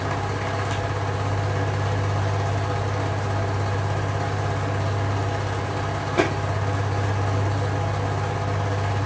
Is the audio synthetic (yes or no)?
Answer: no